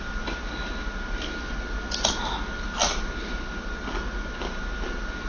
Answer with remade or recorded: recorded